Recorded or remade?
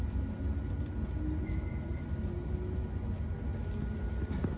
recorded